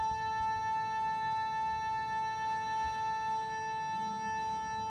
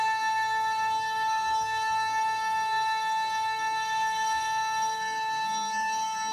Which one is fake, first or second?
second